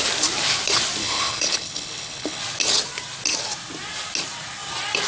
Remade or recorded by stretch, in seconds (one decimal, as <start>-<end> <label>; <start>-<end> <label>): 0.0-1.0 recorded; 1.0-2.4 remade; 2.4-5.1 recorded